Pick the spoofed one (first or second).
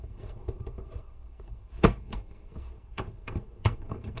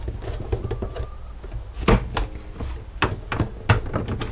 first